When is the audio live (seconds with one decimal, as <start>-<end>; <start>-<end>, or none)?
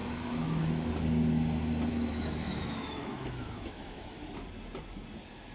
0.9-1.9; 4.2-5.5